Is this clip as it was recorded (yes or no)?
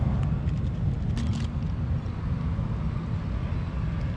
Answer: yes